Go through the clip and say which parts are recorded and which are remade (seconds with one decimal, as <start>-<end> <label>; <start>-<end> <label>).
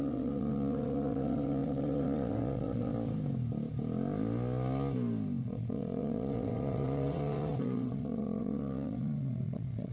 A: 0.0-2.9 remade; 2.9-5.4 recorded; 5.4-9.9 remade